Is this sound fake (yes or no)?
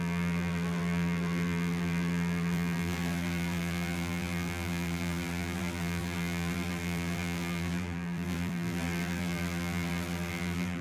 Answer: yes